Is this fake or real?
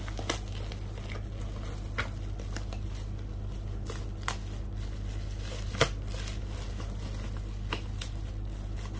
real